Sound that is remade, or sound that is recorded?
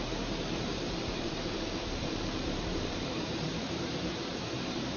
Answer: remade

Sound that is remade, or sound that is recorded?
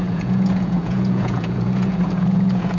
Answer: remade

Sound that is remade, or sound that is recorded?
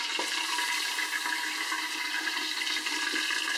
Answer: recorded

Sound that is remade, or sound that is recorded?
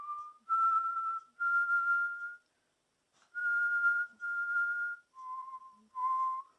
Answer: recorded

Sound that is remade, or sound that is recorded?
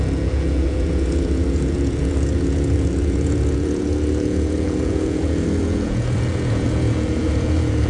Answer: remade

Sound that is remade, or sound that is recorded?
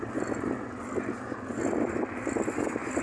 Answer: recorded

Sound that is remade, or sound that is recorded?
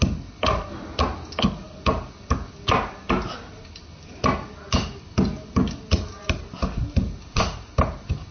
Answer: recorded